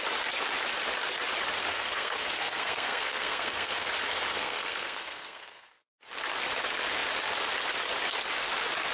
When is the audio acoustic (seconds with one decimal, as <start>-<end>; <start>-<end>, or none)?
0.0-1.6; 3.9-4.3; 5.7-8.9